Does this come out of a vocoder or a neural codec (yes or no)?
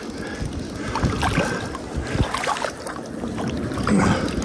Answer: no